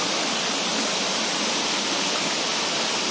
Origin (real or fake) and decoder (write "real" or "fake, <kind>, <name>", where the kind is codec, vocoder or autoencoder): real